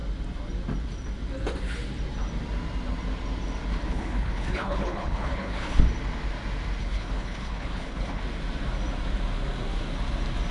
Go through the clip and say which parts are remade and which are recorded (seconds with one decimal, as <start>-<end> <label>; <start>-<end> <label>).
0.0-3.7 recorded; 3.7-5.8 remade; 5.8-6.8 recorded; 6.8-8.2 remade; 8.2-10.5 recorded